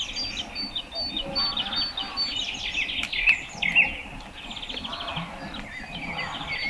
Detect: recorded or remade recorded